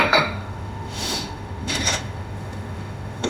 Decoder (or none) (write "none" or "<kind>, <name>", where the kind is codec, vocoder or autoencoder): autoencoder, DAC-VAE